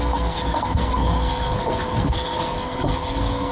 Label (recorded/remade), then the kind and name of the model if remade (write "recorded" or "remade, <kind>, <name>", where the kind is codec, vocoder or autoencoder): remade, codec, SNAC